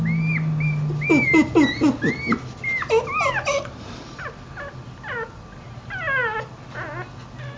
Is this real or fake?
real